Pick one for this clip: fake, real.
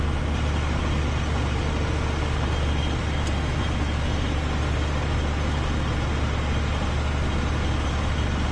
real